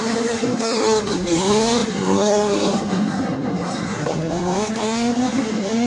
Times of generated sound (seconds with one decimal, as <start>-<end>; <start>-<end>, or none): 0.0-5.9